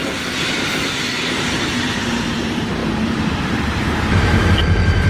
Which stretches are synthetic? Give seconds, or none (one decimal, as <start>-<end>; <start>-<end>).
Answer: 1.4-5.1